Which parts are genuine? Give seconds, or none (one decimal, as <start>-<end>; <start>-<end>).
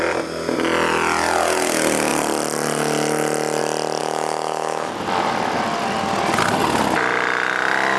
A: 0.0-4.0; 4.9-8.0